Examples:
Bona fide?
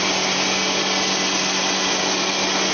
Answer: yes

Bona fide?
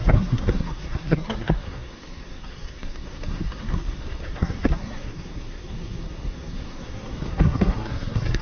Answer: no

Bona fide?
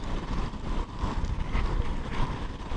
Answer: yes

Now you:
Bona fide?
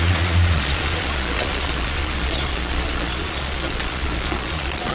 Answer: no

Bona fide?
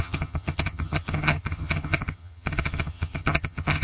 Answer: no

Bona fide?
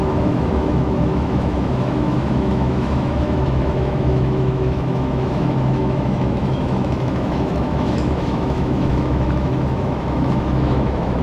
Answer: no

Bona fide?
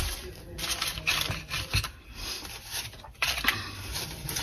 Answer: no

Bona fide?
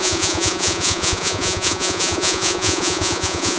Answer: no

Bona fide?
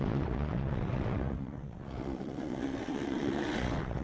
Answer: no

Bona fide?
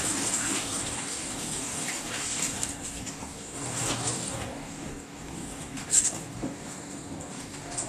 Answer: no